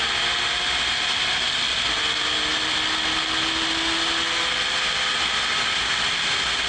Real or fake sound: real